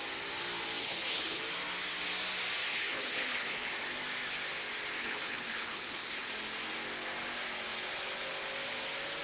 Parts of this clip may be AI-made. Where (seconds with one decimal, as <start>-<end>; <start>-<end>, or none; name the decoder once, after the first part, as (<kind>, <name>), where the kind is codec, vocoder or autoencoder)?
0.8-1.4 (codec, HILCodec); 2.7-3.7; 5.0-6.3